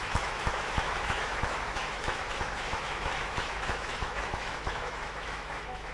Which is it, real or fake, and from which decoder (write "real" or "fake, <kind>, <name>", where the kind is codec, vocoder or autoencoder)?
fake, autoencoder, DAC-VAE